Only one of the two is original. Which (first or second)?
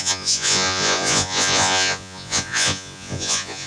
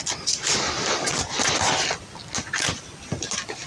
second